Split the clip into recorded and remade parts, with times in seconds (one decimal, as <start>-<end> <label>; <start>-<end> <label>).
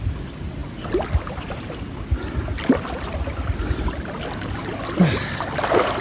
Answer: 0.0-6.0 recorded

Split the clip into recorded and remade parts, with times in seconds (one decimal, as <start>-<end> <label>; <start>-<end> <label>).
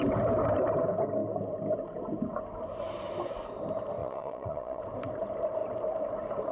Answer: 0.0-4.0 recorded; 4.0-4.8 remade; 4.8-6.5 recorded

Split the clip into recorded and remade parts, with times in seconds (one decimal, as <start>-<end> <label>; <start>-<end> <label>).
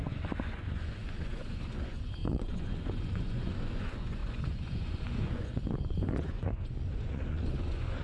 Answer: 0.0-8.0 remade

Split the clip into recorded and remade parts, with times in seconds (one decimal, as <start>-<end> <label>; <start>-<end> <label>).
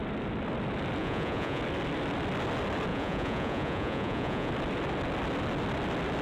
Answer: 0.0-1.0 recorded; 1.0-1.6 remade; 1.6-2.9 recorded; 2.9-4.5 remade; 4.5-6.2 recorded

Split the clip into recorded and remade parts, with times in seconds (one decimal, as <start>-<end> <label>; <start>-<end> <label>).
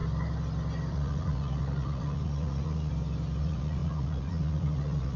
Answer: 0.0-0.9 recorded; 0.9-2.9 remade; 2.9-3.4 recorded; 3.4-5.2 remade